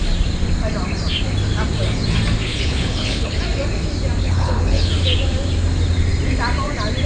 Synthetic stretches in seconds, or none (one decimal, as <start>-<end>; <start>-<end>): 2.5-3.4; 4.2-4.9